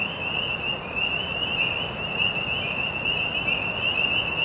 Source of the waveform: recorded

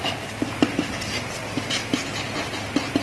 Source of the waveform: recorded